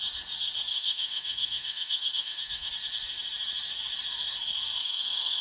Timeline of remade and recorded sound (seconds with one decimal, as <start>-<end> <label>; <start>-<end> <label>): 0.0-0.7 recorded; 0.7-2.7 remade; 2.7-4.8 recorded; 4.8-5.4 remade